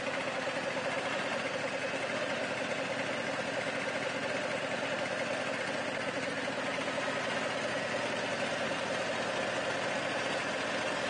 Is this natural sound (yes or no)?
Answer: yes